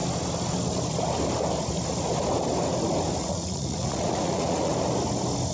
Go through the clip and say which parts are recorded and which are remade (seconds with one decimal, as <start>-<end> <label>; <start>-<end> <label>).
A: 0.0-3.2 recorded; 3.2-4.7 remade; 4.7-5.5 recorded